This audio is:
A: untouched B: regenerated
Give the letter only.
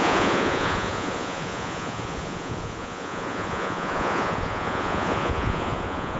B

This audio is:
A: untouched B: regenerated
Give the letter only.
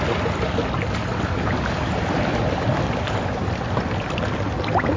A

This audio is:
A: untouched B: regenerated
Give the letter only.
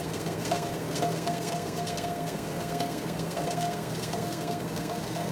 B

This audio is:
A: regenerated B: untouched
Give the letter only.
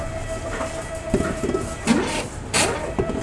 A